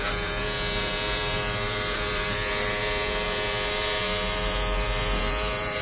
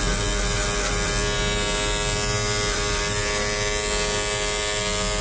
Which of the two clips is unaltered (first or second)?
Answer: second